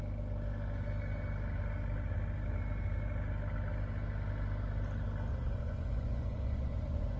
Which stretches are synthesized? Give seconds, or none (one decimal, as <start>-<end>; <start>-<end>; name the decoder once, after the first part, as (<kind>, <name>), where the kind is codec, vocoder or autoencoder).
5.3-7.2 (vocoder, Vocos)